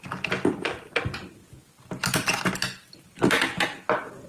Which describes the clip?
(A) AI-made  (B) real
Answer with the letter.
B